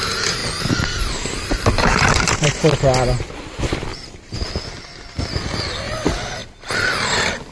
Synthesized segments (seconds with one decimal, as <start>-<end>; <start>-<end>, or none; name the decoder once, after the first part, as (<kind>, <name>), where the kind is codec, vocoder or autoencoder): 0.4-1.0 (vocoder, BigVGAN v2)